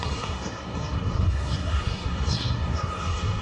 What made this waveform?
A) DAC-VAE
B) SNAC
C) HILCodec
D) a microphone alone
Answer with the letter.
B